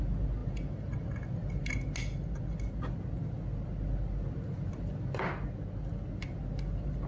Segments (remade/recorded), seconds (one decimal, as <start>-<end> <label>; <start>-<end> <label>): 0.0-7.1 recorded